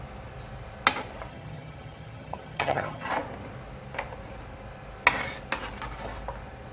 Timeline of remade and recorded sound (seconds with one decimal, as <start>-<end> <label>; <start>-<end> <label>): 0.0-1.3 recorded; 1.3-3.1 remade; 3.1-6.7 recorded